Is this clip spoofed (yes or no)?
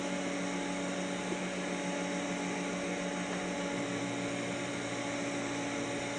no